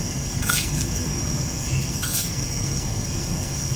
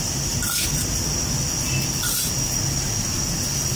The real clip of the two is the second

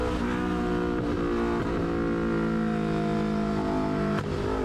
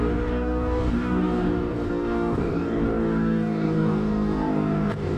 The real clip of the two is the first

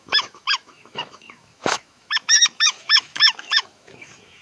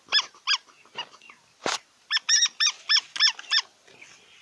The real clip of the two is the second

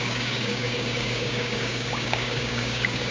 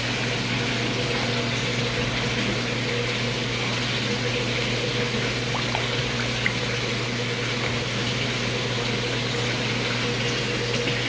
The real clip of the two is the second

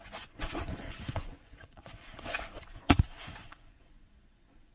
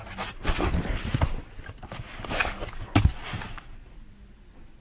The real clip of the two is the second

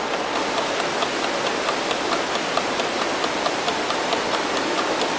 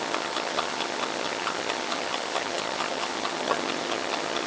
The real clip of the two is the first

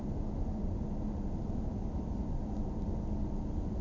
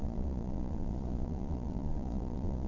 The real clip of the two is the first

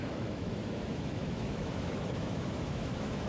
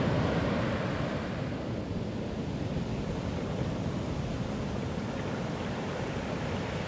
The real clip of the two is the second